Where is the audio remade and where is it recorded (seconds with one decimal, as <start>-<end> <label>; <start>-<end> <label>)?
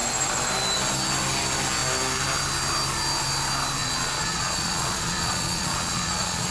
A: 0.0-3.8 recorded; 3.8-6.5 remade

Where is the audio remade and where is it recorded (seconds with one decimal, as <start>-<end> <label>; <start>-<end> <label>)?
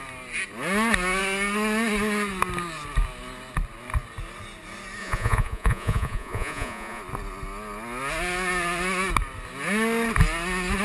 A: 0.0-5.0 recorded; 5.0-7.0 remade; 7.0-10.8 recorded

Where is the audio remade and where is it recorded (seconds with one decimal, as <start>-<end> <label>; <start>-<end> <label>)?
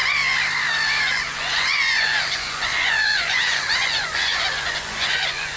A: 0.0-1.0 recorded; 1.0-5.6 remade